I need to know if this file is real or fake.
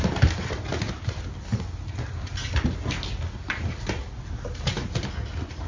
real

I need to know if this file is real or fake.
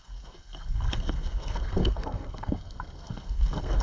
fake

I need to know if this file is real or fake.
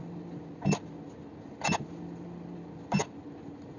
real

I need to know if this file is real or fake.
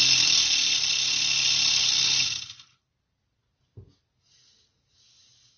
real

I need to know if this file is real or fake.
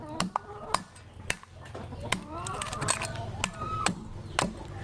real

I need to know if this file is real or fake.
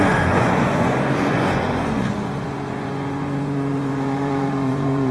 fake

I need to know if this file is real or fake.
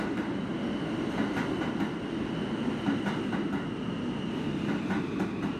real